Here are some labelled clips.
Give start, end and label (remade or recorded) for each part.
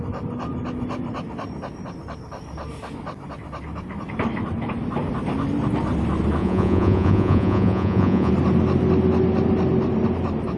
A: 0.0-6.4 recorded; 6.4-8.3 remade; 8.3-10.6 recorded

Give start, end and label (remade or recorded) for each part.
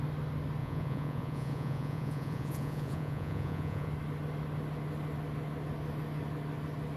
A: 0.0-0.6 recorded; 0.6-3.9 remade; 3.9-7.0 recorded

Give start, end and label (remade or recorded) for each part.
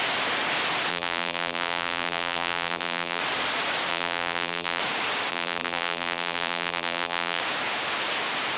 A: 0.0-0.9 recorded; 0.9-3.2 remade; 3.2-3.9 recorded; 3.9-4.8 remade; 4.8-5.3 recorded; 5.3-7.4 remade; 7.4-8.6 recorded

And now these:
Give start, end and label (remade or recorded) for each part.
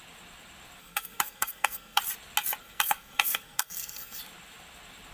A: 0.0-0.8 recorded; 0.8-2.0 remade; 2.0-2.6 recorded; 2.6-4.2 remade; 4.2-5.1 recorded